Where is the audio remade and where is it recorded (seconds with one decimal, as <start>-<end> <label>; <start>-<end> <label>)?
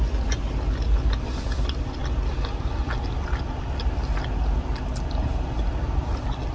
0.0-6.5 recorded